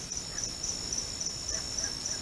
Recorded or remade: recorded